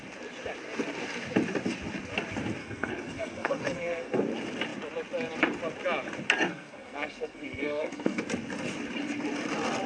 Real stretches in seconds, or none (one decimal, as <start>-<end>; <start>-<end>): 0.0-2.6; 4.2-6.5; 8.2-9.9